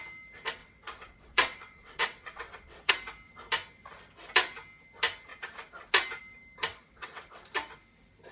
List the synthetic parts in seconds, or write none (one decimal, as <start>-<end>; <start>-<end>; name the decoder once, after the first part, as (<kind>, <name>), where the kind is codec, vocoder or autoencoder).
0.6-2.9 (vocoder, WaveNeXt); 6.7-7.4